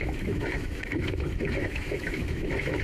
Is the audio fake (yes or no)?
yes